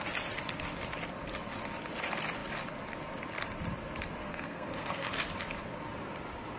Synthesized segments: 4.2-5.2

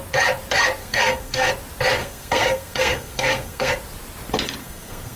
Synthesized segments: 0.8-1.5; 2.0-3.7; 4.6-5.2

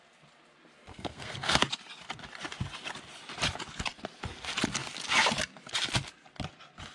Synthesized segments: 0.9-1.7

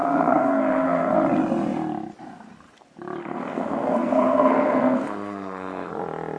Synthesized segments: 0.0-1.1; 3.2-5.9

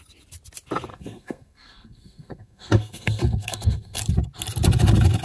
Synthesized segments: 0.9-4.0

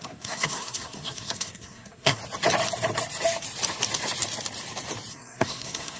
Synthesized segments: 0.0-2.2; 5.1-6.0

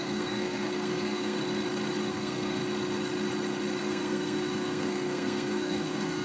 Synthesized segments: 0.0-1.4; 2.1-2.6; 3.8-6.2